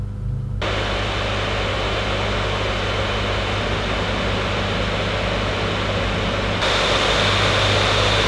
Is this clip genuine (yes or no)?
yes